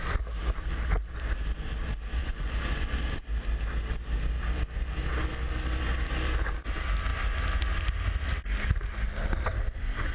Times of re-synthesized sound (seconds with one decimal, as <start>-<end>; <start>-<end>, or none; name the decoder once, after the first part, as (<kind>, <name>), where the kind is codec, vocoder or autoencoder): 2.2-3.0 (vocoder, Vocos)